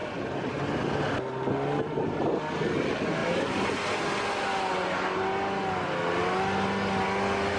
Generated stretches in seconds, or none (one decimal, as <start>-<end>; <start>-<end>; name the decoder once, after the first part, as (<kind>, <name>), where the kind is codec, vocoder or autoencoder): none